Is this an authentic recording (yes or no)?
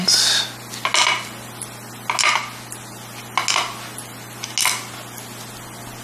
yes